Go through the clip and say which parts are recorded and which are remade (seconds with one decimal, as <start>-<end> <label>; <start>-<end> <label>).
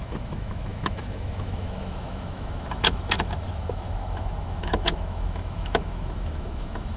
0.0-7.0 remade